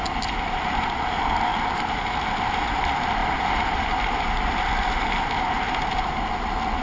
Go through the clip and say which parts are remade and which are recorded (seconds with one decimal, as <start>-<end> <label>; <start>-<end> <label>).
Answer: 0.0-6.8 recorded